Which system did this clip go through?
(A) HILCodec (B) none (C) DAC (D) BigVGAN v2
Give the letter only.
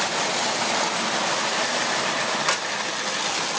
B